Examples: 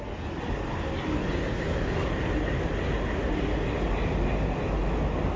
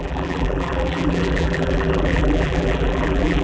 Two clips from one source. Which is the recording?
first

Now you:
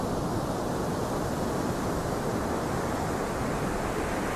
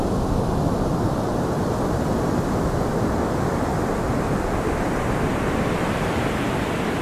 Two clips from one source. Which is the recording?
first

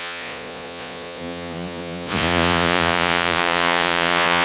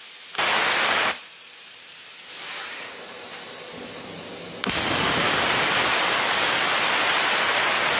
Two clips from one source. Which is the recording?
second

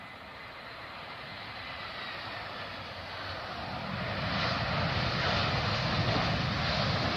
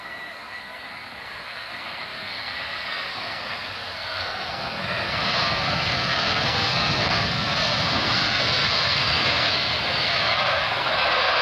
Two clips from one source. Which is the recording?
first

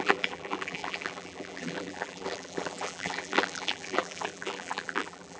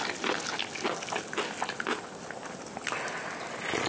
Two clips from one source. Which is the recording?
second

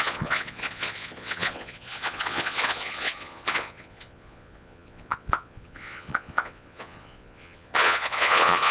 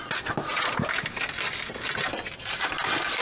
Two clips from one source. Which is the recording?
second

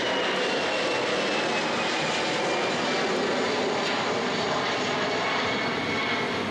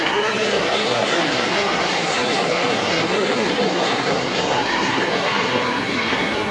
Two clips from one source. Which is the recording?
first